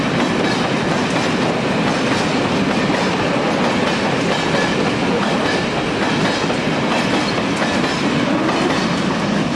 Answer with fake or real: real